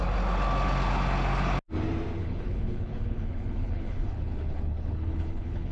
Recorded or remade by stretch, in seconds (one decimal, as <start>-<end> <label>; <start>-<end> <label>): 0.0-2.2 recorded; 2.2-5.7 remade